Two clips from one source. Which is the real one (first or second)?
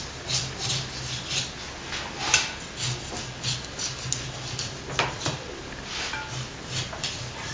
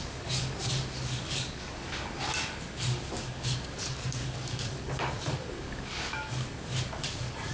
first